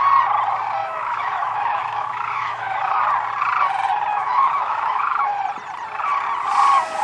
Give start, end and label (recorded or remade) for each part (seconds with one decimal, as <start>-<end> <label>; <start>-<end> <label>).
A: 0.0-0.8 recorded; 0.8-3.0 remade; 3.0-4.1 recorded; 4.1-5.4 remade; 5.4-7.0 recorded